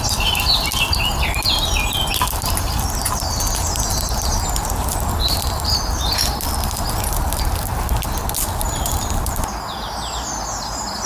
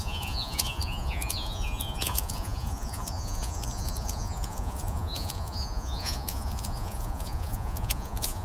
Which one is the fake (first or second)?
second